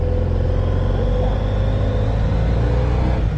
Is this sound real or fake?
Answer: real